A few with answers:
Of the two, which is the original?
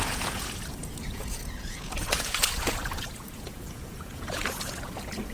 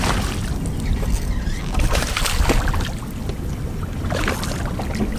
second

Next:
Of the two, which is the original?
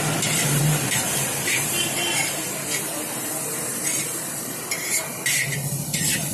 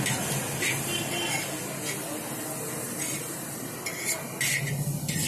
second